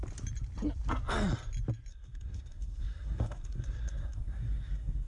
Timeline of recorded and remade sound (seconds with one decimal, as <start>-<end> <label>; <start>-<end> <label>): 0.0-1.9 recorded; 1.9-5.1 remade